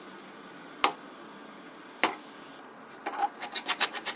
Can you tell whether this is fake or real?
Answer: real